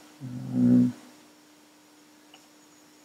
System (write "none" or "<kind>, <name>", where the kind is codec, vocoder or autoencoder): none